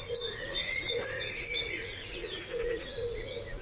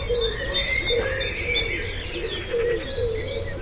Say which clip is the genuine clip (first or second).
second